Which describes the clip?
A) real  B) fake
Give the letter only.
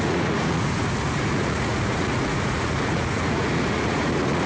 B